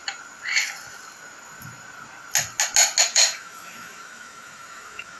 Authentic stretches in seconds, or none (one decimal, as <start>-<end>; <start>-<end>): 0.0-3.1